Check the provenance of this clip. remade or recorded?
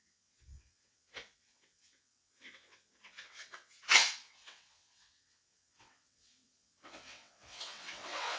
remade